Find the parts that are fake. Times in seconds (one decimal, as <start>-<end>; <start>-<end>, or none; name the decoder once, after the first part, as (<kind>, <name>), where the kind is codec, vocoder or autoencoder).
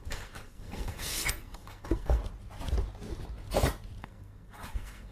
0.0-2.2 (codec, SNAC); 4.0-5.1